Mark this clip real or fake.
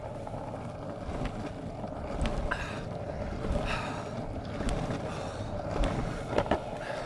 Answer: real